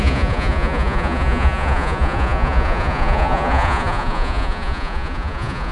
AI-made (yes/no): yes